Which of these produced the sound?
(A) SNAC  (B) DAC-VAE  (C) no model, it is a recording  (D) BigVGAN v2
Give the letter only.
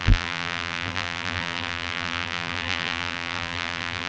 D